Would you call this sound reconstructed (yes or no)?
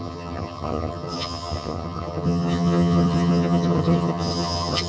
yes